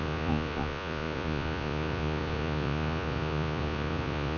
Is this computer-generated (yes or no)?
yes